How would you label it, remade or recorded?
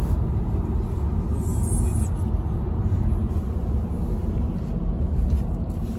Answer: recorded